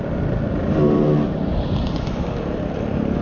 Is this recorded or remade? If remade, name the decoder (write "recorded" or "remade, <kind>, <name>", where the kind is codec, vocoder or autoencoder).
recorded